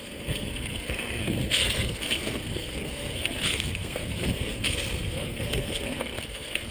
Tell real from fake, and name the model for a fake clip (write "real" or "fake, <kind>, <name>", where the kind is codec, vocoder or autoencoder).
fake, codec, SNAC